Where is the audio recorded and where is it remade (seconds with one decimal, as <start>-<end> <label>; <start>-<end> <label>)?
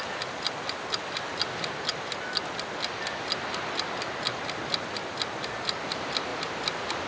0.0-7.1 recorded